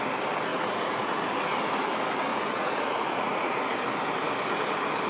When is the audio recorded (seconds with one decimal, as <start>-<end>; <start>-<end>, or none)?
0.0-0.5; 1.2-2.3; 3.6-5.1